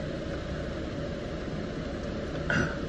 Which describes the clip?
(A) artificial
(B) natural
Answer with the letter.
B